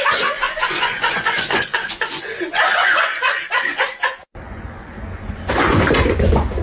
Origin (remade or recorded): remade